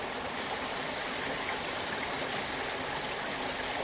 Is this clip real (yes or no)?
yes